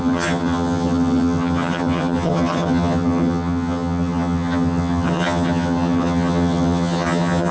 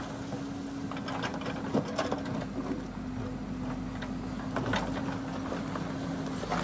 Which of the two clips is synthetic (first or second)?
first